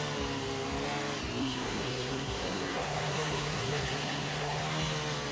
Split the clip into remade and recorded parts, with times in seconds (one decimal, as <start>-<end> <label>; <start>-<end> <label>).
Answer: 0.0-1.4 recorded; 1.4-4.6 remade; 4.6-5.3 recorded

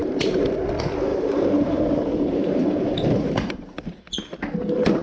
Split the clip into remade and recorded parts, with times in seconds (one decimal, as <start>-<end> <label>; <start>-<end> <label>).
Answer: 0.0-0.6 remade; 0.6-1.1 recorded; 1.1-4.1 remade; 4.1-5.0 recorded